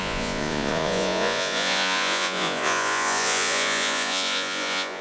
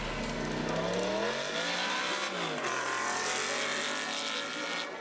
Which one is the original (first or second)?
second